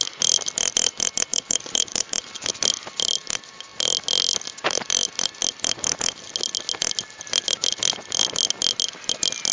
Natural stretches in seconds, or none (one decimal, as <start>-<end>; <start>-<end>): 0.0-1.3; 2.5-9.5